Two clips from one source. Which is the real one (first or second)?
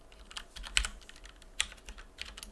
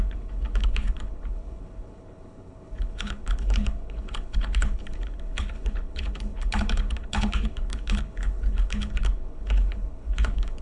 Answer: first